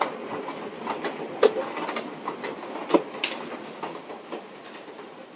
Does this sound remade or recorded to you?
recorded